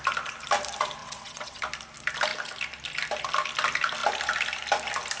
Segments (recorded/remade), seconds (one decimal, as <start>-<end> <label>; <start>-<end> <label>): 0.0-1.0 recorded; 1.0-1.6 remade; 1.6-5.2 recorded